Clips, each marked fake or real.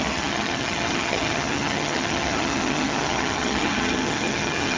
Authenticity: fake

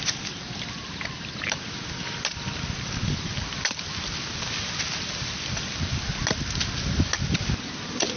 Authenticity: real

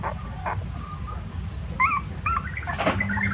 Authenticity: real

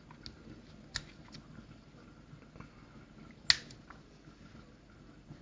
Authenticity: real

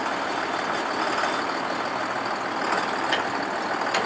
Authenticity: real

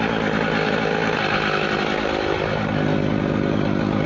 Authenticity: real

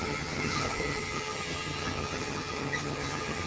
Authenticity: fake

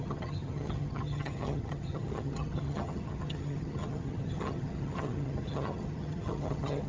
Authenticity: fake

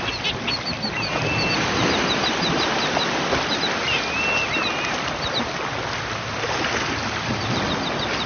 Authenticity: real